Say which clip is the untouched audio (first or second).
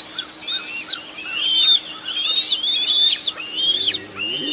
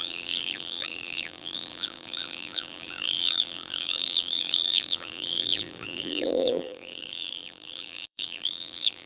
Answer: first